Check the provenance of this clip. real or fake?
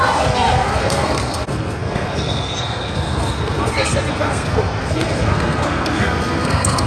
fake